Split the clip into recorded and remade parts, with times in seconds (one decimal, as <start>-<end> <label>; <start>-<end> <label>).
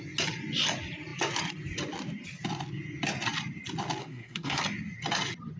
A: 0.0-4.0 recorded; 4.0-4.6 remade; 4.6-5.6 recorded